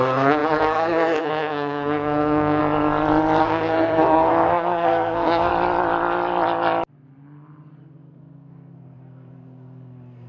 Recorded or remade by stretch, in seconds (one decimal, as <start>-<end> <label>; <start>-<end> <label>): 0.0-2.6 remade; 2.6-3.4 recorded; 3.4-5.5 remade; 5.5-7.8 recorded; 7.8-10.3 remade